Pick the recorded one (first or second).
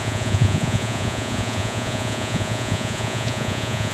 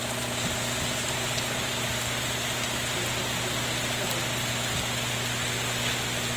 second